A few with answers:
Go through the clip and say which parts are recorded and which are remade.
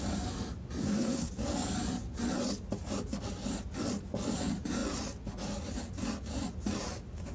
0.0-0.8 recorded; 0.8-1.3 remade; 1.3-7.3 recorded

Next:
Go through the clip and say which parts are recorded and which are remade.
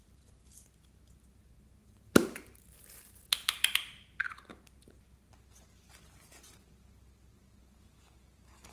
0.0-1.8 recorded; 1.8-2.6 remade; 2.6-8.7 recorded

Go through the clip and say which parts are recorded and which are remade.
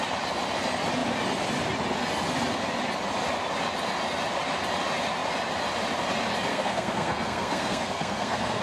0.0-6.5 recorded; 6.5-8.6 remade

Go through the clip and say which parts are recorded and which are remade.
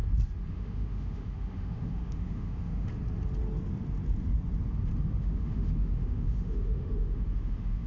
0.0-0.5 recorded; 0.5-2.9 remade; 2.9-5.2 recorded; 5.2-7.9 remade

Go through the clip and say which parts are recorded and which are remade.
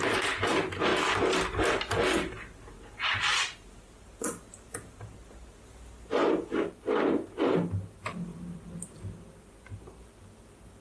0.0-10.8 recorded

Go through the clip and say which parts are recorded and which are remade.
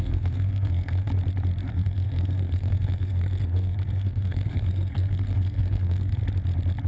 0.0-1.1 remade; 1.1-1.7 recorded; 1.7-6.2 remade; 6.2-6.9 recorded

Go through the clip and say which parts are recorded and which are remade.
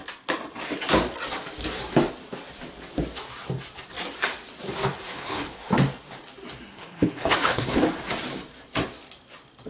0.0-4.9 recorded; 4.9-5.7 remade; 5.7-6.7 recorded; 6.7-7.8 remade; 7.8-9.7 recorded